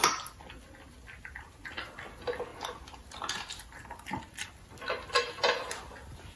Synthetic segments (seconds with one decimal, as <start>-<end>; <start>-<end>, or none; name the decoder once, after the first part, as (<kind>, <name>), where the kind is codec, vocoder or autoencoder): none